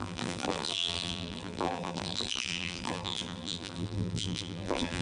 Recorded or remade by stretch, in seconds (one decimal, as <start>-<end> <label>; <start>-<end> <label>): 0.0-5.0 remade